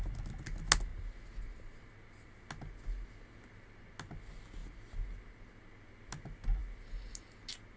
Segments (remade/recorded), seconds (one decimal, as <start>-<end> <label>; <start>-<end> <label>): 0.0-7.8 recorded